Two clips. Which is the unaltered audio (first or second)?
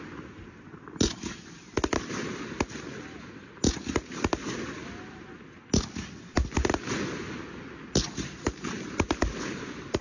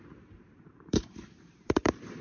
first